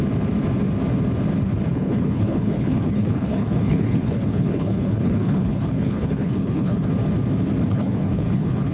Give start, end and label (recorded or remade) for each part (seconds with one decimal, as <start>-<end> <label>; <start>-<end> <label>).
0.0-1.7 recorded; 1.7-6.9 remade; 6.9-7.7 recorded; 7.7-8.7 remade